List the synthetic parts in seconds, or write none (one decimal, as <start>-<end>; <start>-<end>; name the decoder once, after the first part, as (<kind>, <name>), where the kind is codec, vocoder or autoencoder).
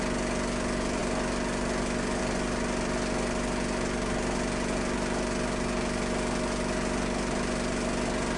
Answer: none